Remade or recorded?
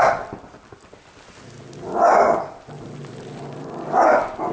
recorded